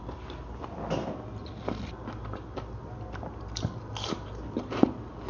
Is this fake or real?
real